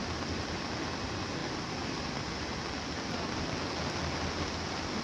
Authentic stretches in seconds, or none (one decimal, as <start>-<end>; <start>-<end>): 0.0-5.0